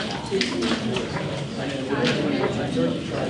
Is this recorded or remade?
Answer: recorded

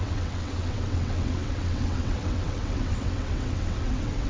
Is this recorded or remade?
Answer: remade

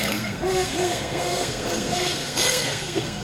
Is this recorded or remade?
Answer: remade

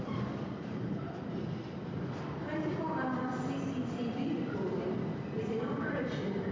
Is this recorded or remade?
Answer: remade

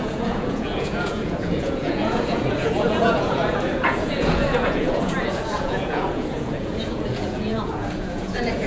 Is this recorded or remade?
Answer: remade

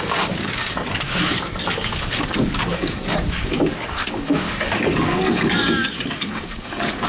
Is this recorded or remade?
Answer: remade